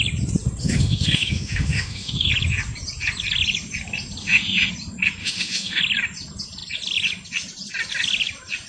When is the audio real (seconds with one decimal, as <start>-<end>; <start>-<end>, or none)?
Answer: 0.0-0.6; 2.3-4.2; 4.7-5.2; 5.8-8.7